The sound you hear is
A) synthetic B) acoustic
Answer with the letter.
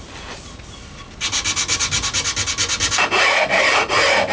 B